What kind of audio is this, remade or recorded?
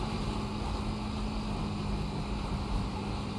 recorded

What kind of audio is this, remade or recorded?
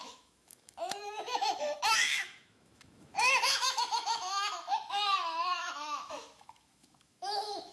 remade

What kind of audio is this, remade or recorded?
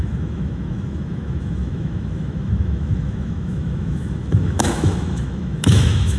remade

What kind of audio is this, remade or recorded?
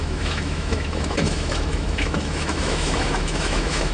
remade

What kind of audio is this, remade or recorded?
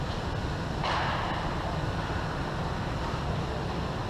recorded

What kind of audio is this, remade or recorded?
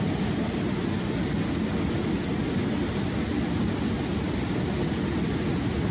recorded